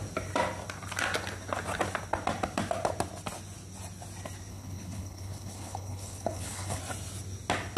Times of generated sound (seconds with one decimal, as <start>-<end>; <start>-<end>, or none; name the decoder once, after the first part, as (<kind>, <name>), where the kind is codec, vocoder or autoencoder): 4.5-6.8 (codec, HILCodec)